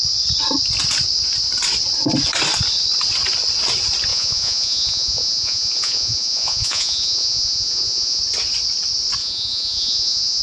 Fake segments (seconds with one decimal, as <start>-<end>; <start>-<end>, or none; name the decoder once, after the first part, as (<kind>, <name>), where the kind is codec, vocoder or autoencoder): 4.1-8.2 (vocoder, Vocos); 9.2-10.4